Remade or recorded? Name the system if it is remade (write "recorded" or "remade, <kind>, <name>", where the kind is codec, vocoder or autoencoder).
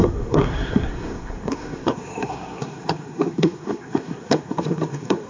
remade, codec, SNAC